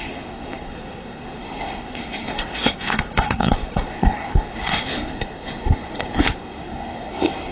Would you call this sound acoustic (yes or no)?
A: no